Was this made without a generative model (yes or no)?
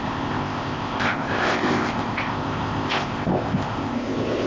no